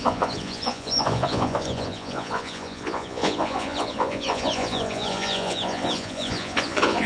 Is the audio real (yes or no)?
no